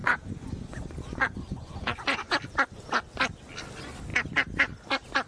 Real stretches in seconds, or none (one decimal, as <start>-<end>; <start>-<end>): 2.3-5.3